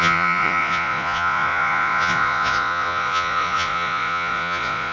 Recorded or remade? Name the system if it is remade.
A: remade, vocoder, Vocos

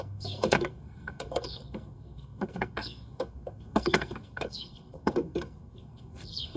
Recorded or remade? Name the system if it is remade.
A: remade, codec, SNAC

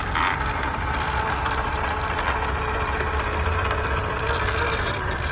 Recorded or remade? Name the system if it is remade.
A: recorded